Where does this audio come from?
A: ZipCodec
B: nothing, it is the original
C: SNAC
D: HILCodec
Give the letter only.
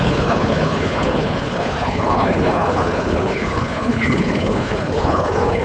D